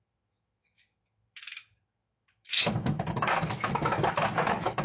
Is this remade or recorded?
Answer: remade